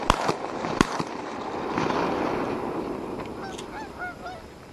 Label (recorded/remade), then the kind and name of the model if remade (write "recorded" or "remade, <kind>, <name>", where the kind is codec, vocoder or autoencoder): recorded